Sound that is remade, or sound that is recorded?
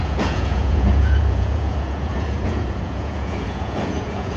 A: remade